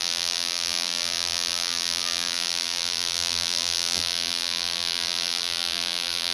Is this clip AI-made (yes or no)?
yes